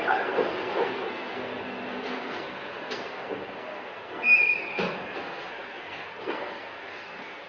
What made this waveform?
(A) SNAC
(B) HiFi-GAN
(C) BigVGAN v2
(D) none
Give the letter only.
A